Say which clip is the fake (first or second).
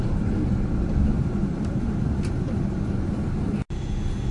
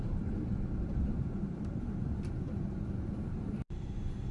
second